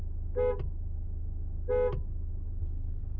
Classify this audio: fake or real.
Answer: real